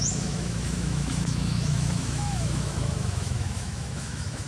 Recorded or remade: remade